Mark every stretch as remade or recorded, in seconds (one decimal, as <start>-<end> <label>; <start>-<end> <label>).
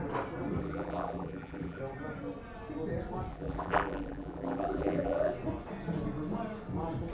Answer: 0.0-0.6 recorded; 0.6-1.8 remade; 1.8-3.3 recorded; 3.3-5.3 remade; 5.3-7.1 recorded